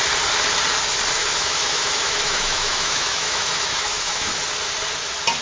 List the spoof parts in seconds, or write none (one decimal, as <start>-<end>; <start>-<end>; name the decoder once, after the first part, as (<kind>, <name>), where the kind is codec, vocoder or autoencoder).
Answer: 1.2-4.4 (autoencoder, DAC-VAE)